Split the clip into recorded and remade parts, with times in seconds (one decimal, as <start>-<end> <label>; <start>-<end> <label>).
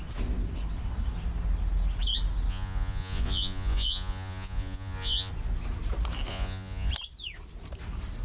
0.0-2.5 recorded; 2.5-5.3 remade; 5.3-6.3 recorded; 6.3-6.9 remade; 6.9-8.2 recorded